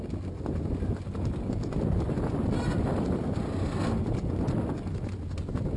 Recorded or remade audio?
recorded